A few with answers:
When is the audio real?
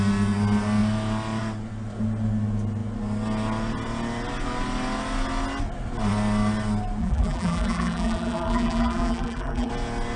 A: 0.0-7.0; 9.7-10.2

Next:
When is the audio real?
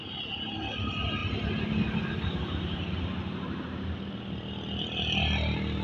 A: 0.0-5.8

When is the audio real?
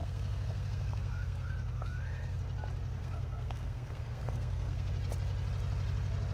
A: 2.4-3.0; 4.9-6.3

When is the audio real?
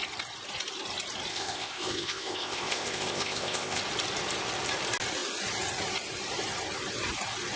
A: 0.0-1.3; 3.8-7.6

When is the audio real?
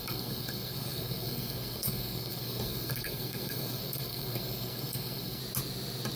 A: 5.4-6.2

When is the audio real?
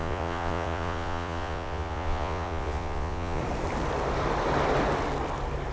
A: 3.4-5.7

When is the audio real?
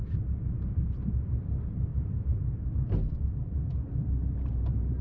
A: 0.0-5.0